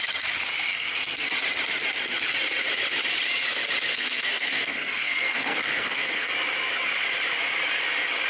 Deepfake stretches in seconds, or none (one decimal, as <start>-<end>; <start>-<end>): 0.7-1.3; 3.9-6.3